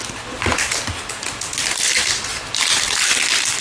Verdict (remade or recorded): recorded